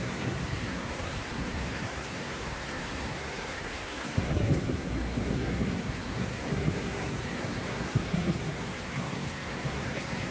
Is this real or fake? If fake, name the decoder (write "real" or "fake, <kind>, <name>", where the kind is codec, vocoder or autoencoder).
fake, codec, SNAC